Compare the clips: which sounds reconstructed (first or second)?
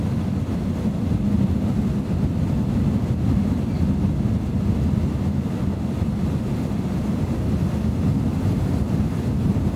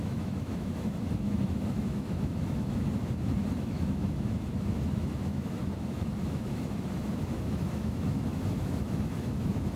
second